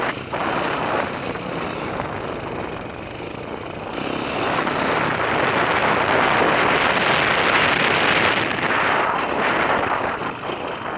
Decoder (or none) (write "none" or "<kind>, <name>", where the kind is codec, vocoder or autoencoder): none